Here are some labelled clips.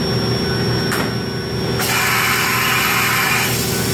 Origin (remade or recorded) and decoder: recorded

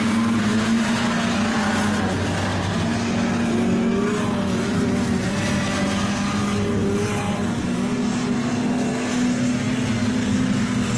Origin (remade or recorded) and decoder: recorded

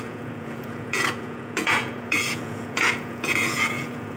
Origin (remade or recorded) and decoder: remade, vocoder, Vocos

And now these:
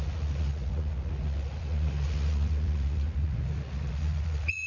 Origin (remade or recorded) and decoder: remade, vocoder, Vocos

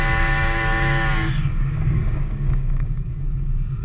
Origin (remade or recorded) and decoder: remade, codec, DAC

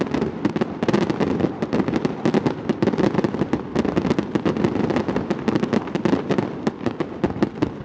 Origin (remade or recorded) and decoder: recorded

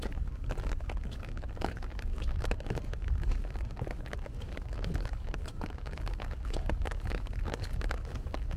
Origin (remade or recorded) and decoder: remade, codec, DAC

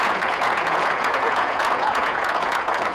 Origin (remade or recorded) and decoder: remade, vocoder, Vocos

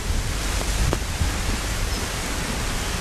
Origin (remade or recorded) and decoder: recorded